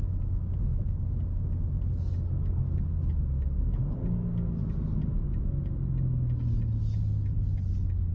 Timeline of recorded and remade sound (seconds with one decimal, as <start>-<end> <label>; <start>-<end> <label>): 0.0-8.1 recorded